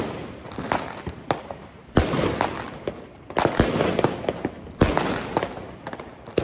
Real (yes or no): yes